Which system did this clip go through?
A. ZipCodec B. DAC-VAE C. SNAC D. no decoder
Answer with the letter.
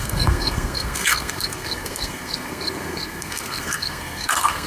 C